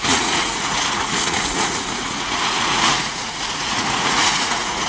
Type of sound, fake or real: fake